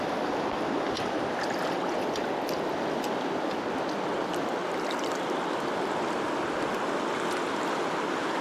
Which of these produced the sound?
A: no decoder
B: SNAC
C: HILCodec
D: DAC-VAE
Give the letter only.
A